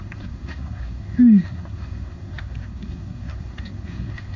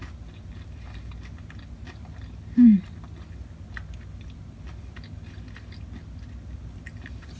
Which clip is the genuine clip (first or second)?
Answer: second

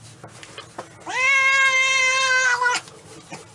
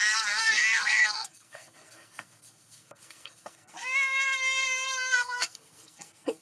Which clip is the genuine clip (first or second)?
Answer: first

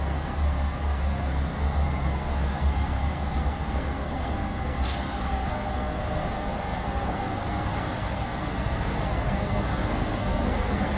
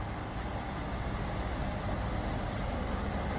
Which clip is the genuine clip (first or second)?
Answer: second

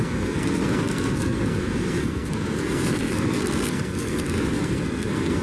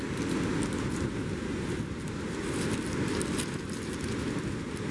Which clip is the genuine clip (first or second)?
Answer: second